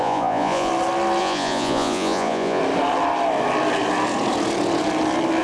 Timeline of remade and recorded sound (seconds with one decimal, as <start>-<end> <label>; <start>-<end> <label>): 0.0-0.7 remade; 0.7-1.2 recorded; 1.2-2.6 remade; 2.6-5.4 recorded